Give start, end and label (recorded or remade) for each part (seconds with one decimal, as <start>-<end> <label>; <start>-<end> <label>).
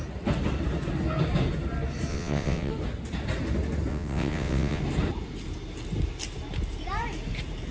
0.0-2.1 recorded; 2.1-2.7 remade; 2.7-3.9 recorded; 3.9-4.8 remade; 4.8-7.7 recorded